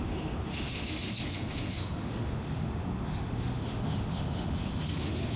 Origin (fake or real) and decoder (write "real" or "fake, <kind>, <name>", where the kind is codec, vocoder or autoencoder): fake, autoencoder, DAC-VAE